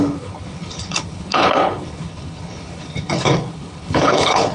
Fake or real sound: fake